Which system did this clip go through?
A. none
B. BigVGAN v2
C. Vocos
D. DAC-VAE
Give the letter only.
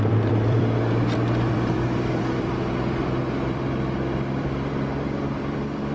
B